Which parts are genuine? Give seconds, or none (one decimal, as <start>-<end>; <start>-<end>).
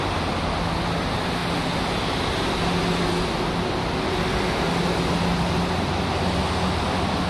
0.0-7.3